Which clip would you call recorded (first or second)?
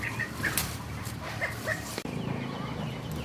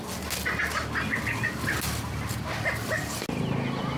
second